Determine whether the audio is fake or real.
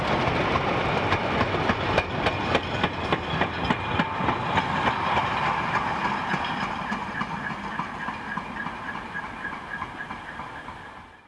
real